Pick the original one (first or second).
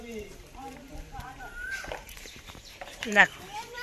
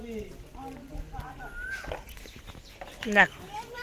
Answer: second